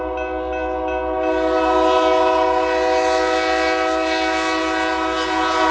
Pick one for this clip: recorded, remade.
recorded